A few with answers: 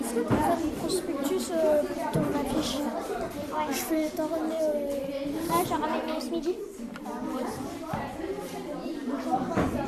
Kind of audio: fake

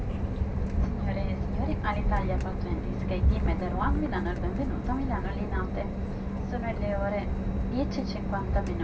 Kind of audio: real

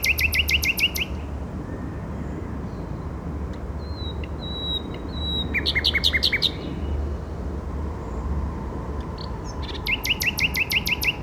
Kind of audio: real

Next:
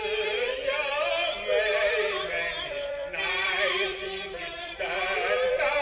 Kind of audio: fake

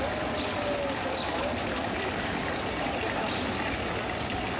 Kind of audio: real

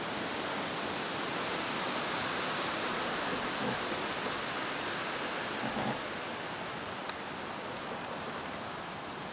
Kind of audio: real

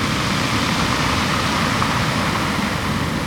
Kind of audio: real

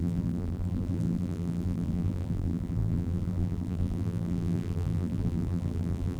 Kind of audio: fake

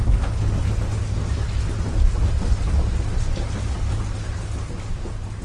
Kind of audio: real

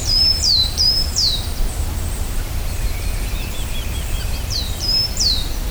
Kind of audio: fake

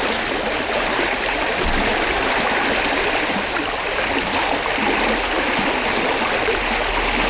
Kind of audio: real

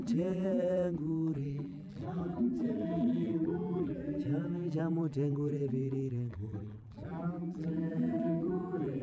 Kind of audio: fake